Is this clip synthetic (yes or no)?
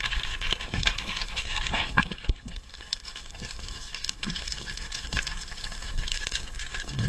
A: yes